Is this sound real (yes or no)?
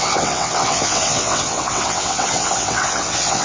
no